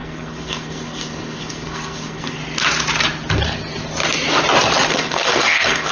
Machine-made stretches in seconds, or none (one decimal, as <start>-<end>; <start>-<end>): 0.0-2.4; 4.9-5.9